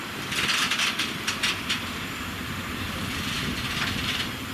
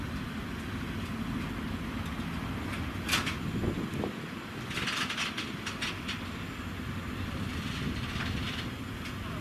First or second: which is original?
second